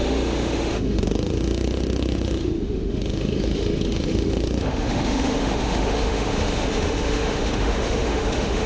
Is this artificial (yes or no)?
yes